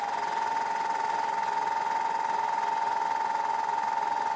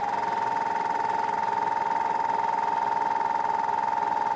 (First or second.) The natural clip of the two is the second